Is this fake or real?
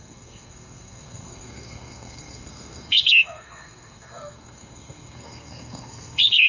fake